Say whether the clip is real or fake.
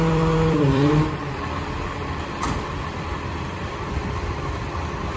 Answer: fake